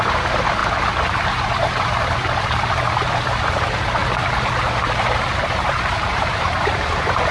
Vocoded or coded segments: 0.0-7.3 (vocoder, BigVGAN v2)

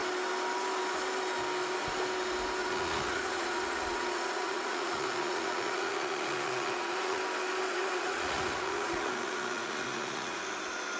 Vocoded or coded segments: 2.6-7.2 (vocoder, Vocos); 7.7-10.4

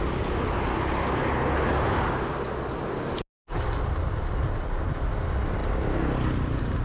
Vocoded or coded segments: none